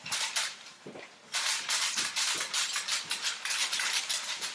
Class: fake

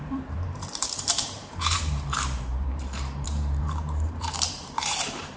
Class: fake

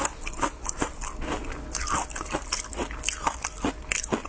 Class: real